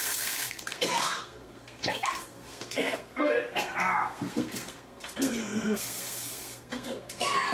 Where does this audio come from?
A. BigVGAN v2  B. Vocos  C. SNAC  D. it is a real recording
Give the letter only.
C